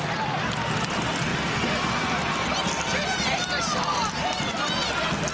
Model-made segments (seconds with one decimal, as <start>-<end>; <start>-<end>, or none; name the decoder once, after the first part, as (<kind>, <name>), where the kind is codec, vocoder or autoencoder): none